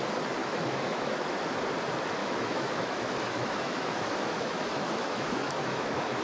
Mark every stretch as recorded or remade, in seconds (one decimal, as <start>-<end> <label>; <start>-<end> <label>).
0.0-0.4 recorded; 0.4-1.6 remade; 1.6-2.2 recorded; 2.2-6.2 remade